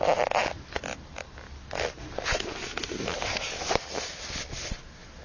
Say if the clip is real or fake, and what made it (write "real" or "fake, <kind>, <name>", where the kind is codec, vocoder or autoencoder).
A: real